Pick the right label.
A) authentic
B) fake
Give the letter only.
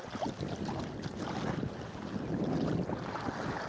A